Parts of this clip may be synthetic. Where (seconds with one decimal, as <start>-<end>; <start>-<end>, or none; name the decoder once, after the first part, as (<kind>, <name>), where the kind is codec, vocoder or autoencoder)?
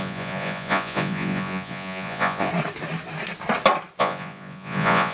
0.0-2.5 (vocoder, Vocos); 4.0-5.1